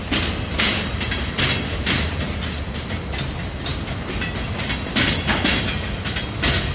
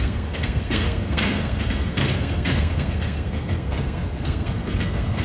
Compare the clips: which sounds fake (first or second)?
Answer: second